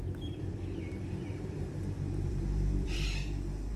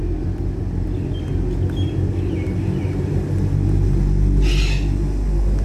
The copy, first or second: first